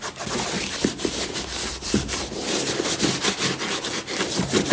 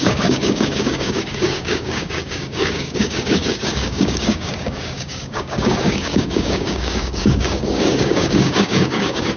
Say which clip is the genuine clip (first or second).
first